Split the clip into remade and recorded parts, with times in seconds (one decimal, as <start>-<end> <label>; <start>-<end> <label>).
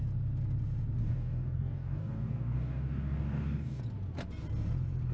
0.0-1.0 recorded; 1.0-3.8 remade; 3.8-5.1 recorded